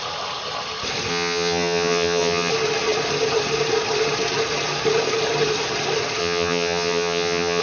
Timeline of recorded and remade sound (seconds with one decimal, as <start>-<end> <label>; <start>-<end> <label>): 0.0-1.1 recorded; 1.1-2.5 remade; 2.5-6.2 recorded; 6.2-7.6 remade